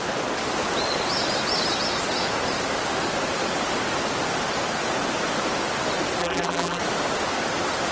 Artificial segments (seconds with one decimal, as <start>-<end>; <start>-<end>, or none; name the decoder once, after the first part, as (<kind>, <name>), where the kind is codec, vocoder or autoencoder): 6.2-6.8 (vocoder, BigVGAN v2)